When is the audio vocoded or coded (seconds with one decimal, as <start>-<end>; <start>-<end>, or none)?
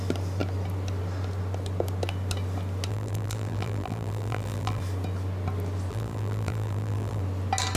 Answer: 2.9-4.8; 5.9-7.2